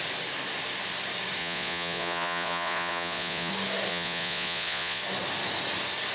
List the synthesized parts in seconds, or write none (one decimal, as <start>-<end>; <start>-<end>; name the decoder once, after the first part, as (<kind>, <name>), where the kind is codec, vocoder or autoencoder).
1.4-3.5 (vocoder, Vocos); 3.9-5.0